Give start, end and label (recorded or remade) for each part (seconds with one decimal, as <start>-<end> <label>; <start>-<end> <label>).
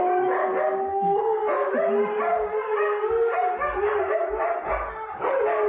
0.0-5.7 recorded